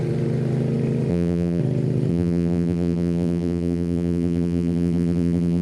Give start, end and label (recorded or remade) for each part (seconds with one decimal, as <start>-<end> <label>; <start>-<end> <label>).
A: 0.0-1.1 recorded; 1.1-1.6 remade; 1.6-2.1 recorded; 2.1-5.6 remade